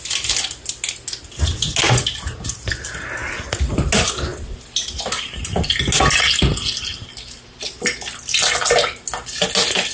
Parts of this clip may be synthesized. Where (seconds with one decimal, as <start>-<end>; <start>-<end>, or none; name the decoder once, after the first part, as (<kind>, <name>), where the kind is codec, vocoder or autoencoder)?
3.2-3.9 (vocoder, BigVGAN v2)